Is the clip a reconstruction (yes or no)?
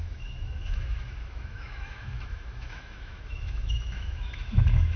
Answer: yes